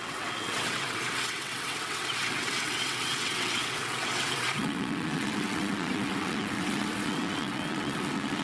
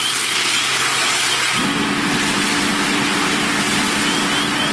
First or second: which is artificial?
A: first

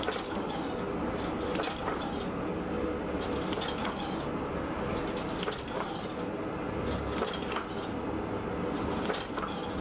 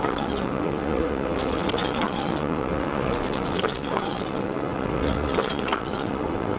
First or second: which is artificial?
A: second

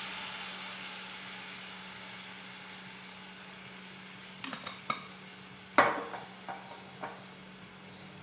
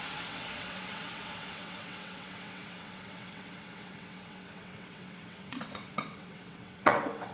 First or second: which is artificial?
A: second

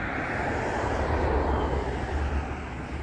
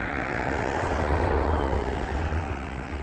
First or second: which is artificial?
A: second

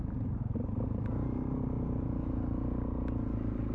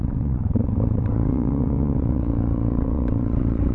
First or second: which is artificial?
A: second